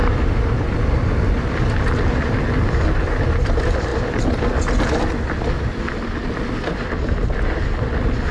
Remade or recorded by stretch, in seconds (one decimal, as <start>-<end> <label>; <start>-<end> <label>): 0.0-8.3 recorded